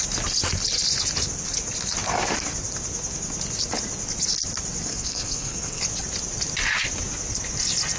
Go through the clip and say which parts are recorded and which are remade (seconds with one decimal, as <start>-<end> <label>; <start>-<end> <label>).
0.0-4.9 recorded; 4.9-5.8 remade; 5.8-8.0 recorded